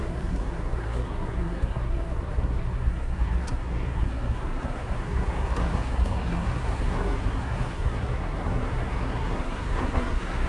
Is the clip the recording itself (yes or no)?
no